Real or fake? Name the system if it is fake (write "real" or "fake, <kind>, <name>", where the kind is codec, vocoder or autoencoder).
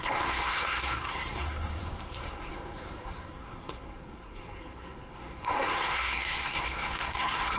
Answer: fake, codec, SNAC